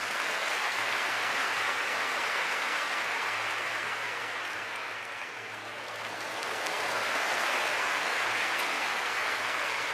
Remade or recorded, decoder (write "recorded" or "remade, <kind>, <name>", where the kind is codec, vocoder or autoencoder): remade, codec, SNAC